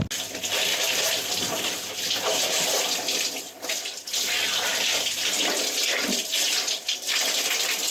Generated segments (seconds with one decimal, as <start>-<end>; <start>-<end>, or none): none